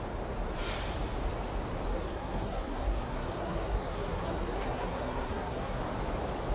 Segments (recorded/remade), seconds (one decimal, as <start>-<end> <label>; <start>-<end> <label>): 0.0-1.9 recorded; 1.9-5.8 remade; 5.8-6.5 recorded